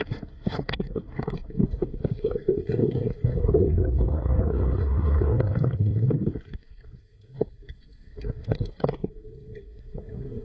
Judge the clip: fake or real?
fake